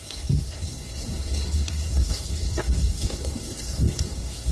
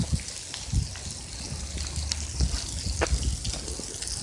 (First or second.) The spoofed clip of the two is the first